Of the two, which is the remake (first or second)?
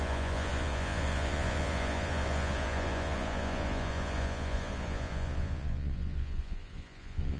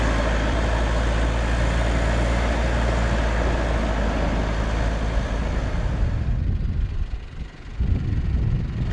first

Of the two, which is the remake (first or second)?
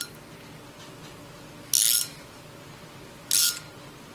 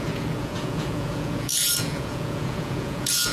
second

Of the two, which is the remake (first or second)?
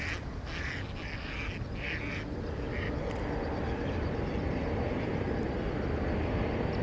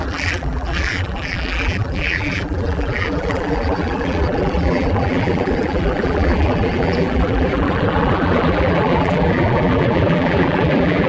second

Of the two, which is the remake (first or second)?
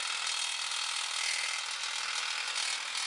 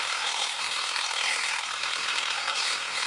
second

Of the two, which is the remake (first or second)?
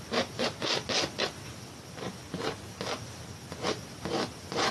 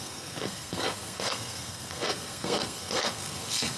second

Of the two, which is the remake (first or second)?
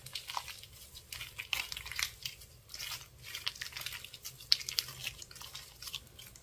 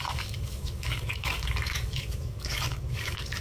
second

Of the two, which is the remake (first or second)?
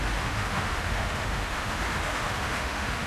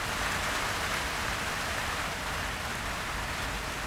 first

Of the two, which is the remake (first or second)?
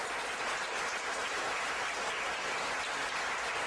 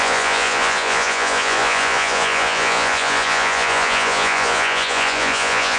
second